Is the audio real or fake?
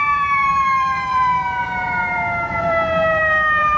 fake